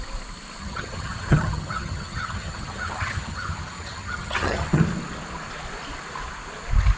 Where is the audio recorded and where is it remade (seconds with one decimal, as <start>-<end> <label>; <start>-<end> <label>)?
0.0-0.6 recorded; 0.6-4.8 remade; 4.8-7.0 recorded